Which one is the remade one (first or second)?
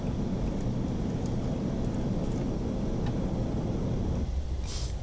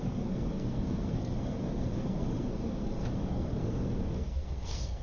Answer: second